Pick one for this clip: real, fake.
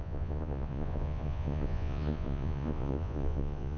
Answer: fake